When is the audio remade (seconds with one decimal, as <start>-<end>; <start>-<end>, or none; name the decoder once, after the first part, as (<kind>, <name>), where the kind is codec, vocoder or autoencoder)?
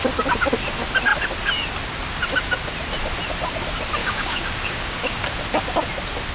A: 4.0-5.4 (codec, DAC)